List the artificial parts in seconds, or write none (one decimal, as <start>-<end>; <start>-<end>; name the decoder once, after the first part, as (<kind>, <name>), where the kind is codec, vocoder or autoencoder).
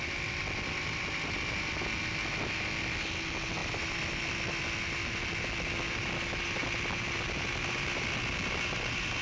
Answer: 3.6-4.5 (vocoder, BigVGAN v2)